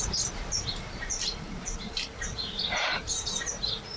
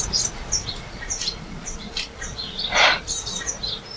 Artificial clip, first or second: first